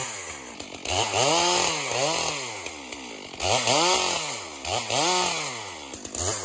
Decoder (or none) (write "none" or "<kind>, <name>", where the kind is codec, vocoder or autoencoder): none